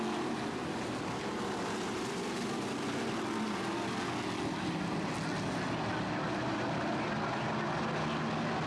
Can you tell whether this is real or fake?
real